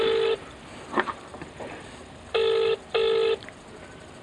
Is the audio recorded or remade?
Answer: recorded